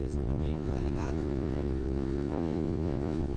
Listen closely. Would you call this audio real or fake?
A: fake